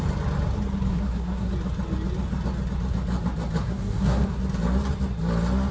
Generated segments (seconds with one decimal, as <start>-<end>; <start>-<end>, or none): 0.9-1.5; 3.6-4.4

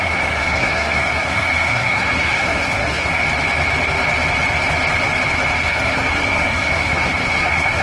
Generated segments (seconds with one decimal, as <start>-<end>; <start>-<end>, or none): 0.0-3.2; 5.6-7.8

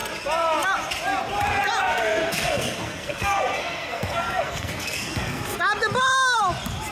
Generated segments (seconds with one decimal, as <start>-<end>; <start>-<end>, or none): 1.9-5.6

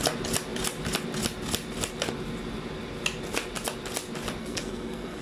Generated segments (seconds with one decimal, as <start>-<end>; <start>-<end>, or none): 4.4-5.2

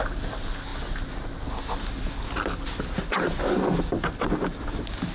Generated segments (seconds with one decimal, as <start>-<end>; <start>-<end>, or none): none